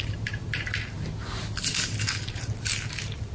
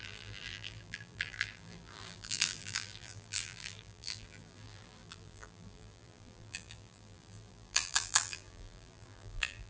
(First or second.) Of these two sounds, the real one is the first